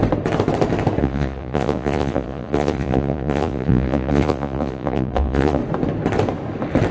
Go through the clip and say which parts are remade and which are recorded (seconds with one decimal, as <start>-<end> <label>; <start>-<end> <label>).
0.0-1.0 recorded; 1.0-5.6 remade; 5.6-6.9 recorded